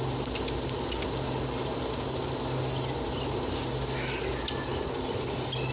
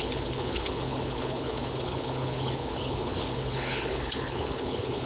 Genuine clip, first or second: first